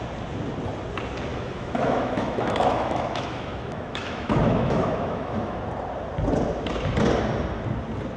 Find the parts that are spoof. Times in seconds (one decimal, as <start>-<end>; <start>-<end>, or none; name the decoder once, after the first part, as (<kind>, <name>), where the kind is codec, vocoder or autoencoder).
1.3-5.6 (autoencoder, DAC-VAE)